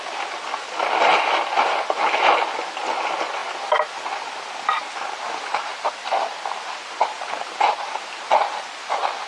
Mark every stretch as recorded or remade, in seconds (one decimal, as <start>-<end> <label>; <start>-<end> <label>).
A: 0.0-9.3 recorded